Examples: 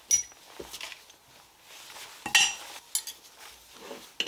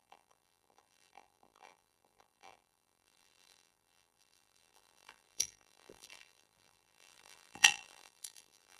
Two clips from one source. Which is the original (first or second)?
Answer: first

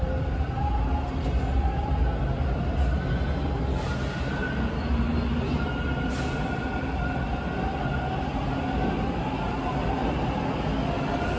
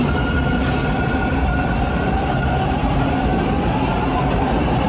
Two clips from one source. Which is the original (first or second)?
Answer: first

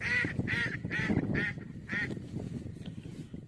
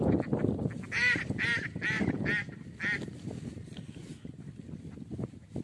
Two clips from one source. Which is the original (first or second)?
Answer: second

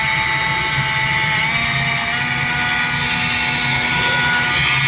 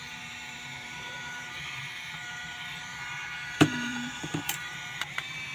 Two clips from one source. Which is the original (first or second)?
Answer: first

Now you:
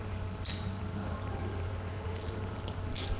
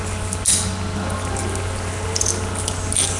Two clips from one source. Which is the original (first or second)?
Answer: second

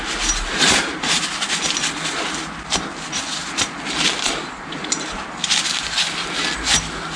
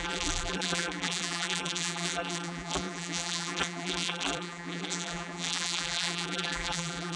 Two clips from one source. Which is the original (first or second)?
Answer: first